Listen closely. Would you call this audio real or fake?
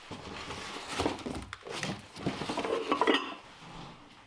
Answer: real